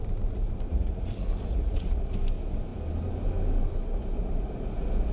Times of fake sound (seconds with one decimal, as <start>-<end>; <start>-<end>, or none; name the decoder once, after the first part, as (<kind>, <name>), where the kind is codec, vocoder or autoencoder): 0.7-2.0 (vocoder, Vocos)